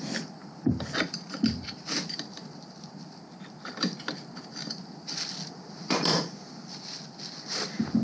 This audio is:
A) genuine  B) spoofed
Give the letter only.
A